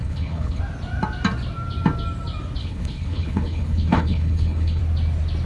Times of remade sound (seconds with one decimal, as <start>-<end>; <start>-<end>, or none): 0.0-0.6; 2.6-4.8